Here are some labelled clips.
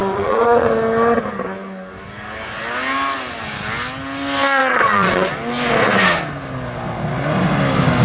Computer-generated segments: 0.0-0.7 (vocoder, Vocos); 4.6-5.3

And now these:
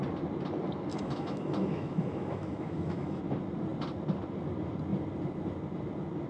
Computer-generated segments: 0.9-3.2 (autoencoder, DAC-VAE)